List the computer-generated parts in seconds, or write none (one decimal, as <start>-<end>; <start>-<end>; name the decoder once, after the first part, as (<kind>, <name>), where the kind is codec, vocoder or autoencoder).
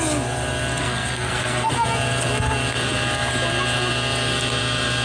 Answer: 0.8-1.7 (codec, SNAC)